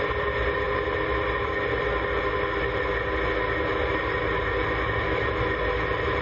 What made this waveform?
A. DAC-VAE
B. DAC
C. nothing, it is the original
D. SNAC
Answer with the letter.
C